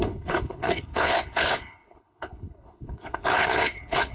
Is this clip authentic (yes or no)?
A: no